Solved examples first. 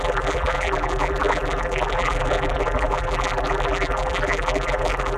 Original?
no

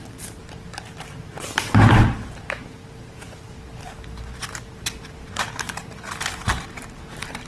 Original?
no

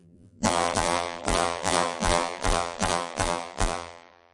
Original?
no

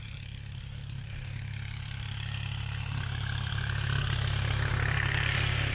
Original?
no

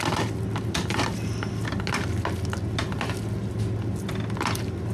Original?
yes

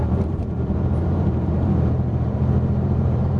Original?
no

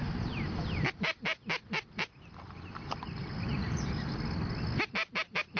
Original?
yes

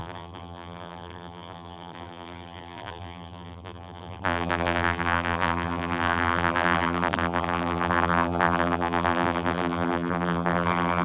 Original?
no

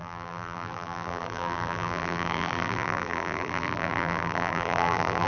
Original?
no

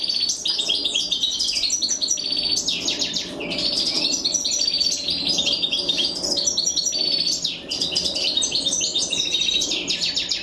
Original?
no